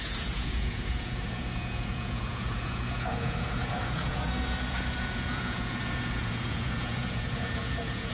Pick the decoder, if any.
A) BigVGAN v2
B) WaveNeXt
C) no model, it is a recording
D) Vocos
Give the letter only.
D